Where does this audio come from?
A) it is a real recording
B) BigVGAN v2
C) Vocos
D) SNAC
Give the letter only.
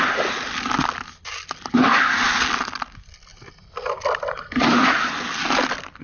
A